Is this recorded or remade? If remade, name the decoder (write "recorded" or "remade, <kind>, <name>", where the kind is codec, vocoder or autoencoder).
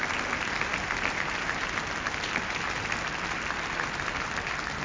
recorded